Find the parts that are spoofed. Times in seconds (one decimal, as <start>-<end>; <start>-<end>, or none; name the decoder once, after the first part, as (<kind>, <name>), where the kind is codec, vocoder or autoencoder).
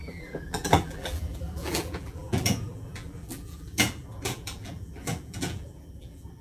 0.0-6.4 (vocoder, BigVGAN v2)